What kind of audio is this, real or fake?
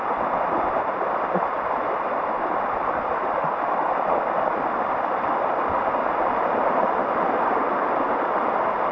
real